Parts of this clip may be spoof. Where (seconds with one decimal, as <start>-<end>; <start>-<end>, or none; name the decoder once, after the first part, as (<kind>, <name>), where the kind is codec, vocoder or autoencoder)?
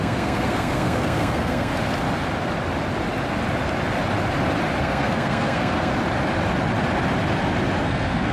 0.0-1.7 (codec, SNAC); 4.8-5.9; 7.8-8.3